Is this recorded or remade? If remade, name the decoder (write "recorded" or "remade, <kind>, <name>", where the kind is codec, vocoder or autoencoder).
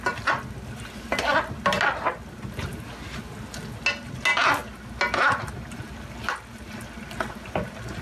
recorded